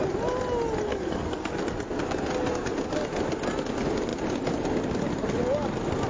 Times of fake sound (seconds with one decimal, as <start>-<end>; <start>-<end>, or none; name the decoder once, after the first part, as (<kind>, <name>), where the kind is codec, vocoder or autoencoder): 0.9-1.5 (codec, SNAC)